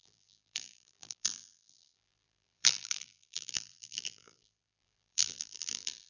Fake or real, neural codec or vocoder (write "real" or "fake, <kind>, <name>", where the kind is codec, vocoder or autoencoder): fake, vocoder, BigVGAN v2